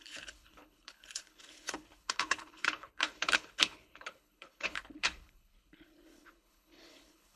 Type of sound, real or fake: fake